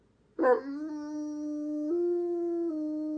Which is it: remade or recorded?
recorded